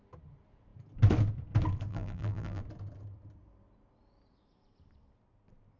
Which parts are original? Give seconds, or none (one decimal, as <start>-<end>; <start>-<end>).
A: 0.0-1.9; 2.6-5.8